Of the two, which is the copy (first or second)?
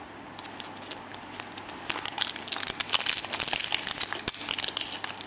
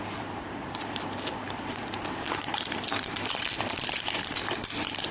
second